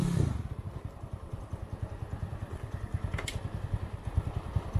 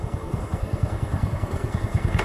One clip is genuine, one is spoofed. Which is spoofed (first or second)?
second